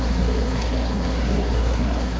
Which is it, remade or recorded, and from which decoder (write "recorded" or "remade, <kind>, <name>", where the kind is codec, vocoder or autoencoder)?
remade, codec, SNAC